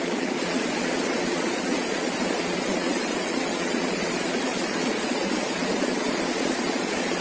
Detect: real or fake fake